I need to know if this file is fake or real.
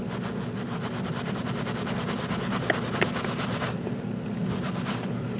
real